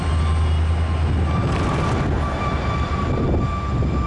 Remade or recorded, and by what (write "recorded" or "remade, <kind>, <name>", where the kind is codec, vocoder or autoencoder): recorded